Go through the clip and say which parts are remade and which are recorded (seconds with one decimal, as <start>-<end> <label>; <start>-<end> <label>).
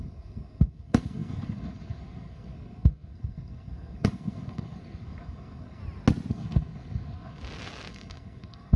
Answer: 0.0-5.8 remade; 5.8-6.3 recorded; 6.3-7.4 remade; 7.4-7.9 recorded; 7.9-8.8 remade